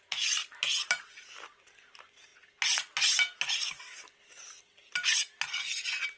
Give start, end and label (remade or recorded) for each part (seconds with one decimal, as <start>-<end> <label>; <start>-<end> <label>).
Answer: 0.0-6.2 recorded